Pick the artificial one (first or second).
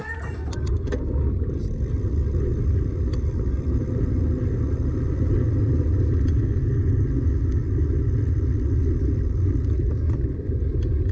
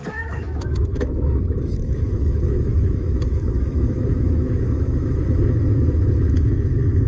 second